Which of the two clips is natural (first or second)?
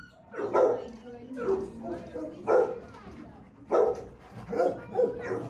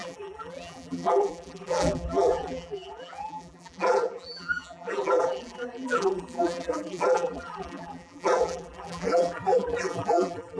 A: first